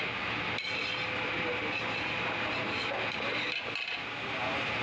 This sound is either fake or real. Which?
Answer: real